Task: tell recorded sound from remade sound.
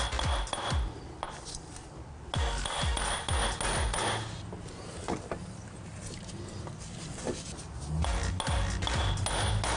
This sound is recorded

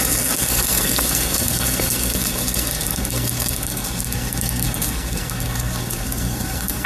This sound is remade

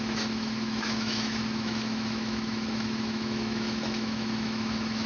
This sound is remade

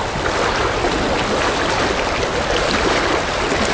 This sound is recorded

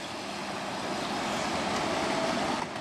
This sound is recorded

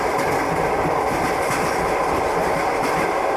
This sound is remade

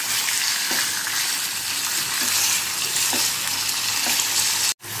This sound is recorded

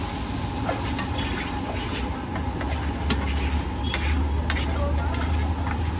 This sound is recorded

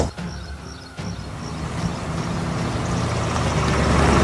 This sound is recorded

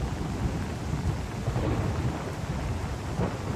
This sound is recorded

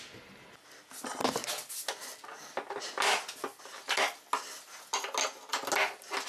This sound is recorded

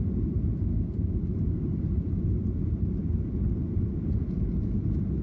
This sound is recorded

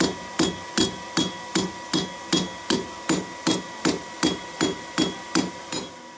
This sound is recorded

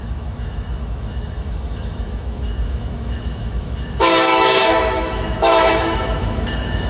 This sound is remade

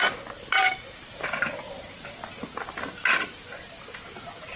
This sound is recorded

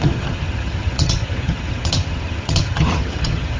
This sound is remade